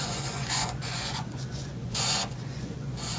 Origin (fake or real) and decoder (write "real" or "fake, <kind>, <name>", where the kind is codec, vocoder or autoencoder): fake, vocoder, Vocos